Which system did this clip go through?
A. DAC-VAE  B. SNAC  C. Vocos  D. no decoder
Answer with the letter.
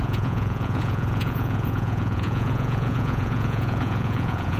C